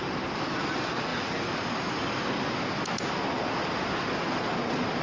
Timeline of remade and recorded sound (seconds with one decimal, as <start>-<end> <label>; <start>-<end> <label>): 0.0-5.0 recorded